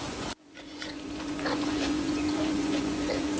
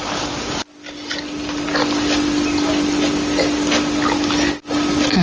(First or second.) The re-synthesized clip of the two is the first